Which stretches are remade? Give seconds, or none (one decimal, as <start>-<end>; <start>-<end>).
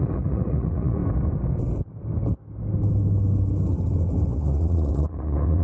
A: 0.0-1.0; 4.3-5.6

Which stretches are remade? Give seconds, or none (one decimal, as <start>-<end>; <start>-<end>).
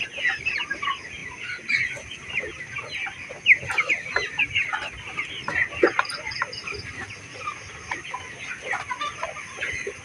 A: none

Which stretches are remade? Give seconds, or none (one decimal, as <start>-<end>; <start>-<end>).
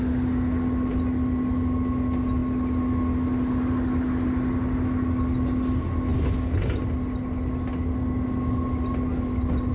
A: none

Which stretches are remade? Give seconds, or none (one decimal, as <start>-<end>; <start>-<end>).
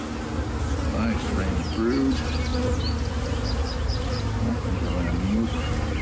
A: none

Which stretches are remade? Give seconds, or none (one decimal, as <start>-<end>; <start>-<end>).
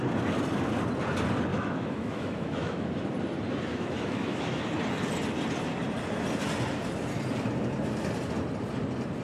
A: 1.5-2.9; 3.7-4.6